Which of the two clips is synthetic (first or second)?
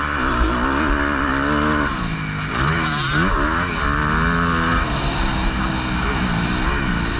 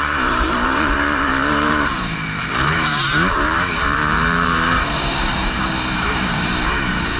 second